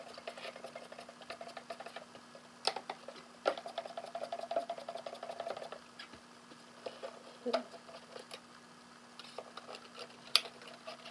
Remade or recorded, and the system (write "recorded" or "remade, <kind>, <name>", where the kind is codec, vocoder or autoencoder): recorded